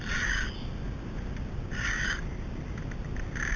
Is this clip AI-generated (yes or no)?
no